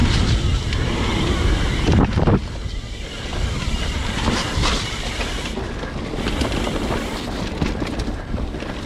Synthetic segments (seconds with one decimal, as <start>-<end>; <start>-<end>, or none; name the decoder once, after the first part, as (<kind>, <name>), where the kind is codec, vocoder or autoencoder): none

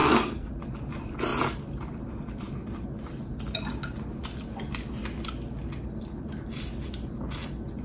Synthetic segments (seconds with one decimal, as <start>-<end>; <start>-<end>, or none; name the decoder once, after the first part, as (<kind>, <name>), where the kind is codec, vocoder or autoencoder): 0.0-0.5 (codec, SNAC)